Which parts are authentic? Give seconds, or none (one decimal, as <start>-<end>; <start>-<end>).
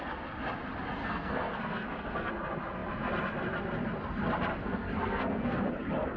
0.0-1.0; 2.3-4.5; 5.7-6.2